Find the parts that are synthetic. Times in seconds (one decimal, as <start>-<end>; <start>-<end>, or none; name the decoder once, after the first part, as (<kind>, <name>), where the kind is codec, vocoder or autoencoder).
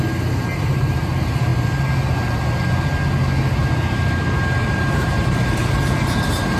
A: 0.0-1.5 (vocoder, BigVGAN v2); 4.7-6.6